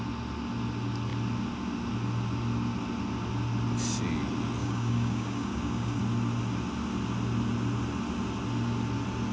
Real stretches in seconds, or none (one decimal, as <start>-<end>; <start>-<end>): 0.0-4.6; 6.0-9.3